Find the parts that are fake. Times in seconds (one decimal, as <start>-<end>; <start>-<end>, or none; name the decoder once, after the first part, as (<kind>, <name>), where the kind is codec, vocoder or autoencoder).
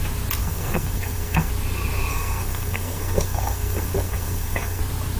0.4-1.5 (codec, SNAC); 2.1-4.8